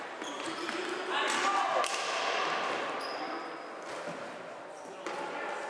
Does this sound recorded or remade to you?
recorded